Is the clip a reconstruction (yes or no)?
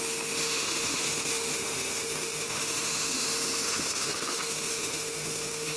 yes